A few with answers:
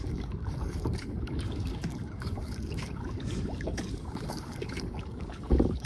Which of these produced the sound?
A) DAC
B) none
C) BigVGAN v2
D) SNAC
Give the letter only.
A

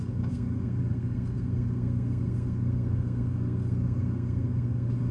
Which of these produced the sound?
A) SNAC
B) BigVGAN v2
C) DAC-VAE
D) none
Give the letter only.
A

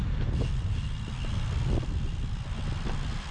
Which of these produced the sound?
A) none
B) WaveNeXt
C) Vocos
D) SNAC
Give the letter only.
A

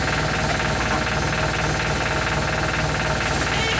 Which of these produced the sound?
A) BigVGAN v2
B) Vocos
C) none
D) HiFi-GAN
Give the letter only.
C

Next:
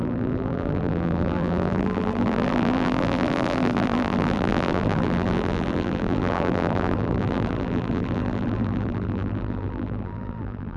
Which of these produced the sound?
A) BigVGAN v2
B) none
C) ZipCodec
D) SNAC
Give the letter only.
A